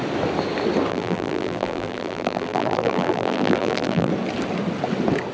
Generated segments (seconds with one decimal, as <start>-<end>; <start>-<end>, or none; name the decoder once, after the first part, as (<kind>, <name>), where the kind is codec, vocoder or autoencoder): 0.9-4.1 (vocoder, BigVGAN v2)

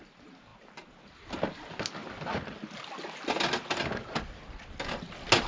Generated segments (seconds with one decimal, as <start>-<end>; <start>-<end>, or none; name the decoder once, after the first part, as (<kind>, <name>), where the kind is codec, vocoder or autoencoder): none

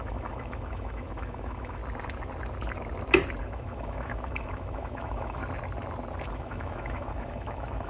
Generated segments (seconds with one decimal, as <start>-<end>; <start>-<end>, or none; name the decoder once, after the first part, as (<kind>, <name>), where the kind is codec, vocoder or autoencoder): 0.0-1.8 (autoencoder, DAC-VAE); 3.4-5.4; 6.3-7.9

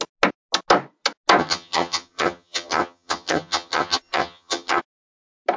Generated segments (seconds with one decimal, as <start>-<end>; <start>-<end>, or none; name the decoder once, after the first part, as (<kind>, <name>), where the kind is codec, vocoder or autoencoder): 1.4-4.8 (vocoder, HiFi-GAN)

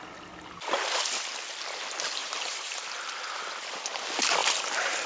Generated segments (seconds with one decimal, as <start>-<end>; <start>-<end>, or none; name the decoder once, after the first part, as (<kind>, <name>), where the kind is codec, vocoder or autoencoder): 2.2-3.2 (vocoder, BigVGAN v2); 4.4-5.1